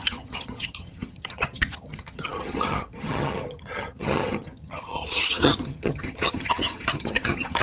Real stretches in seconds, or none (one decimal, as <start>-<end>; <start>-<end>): none